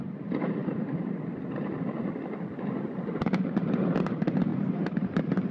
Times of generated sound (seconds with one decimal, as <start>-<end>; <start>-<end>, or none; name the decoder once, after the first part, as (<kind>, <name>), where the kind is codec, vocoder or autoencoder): 0.6-3.1 (vocoder, BigVGAN v2); 4.5-5.5